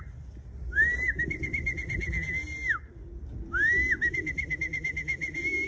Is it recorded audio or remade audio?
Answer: recorded